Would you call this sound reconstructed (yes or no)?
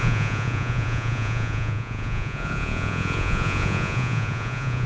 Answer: yes